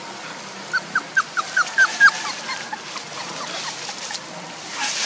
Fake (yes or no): no